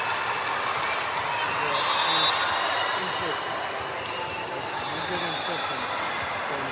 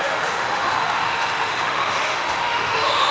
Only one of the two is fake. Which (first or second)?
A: second